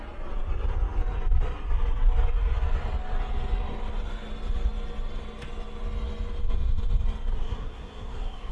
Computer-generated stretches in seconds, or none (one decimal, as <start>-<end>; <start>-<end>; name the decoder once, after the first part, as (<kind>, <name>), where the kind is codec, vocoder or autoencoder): 7.3-8.5 (codec, SNAC)